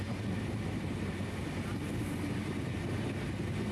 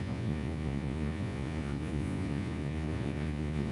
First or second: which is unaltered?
first